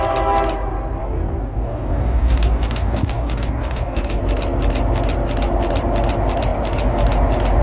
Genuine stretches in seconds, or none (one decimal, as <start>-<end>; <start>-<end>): 0.0-1.0; 4.2-7.6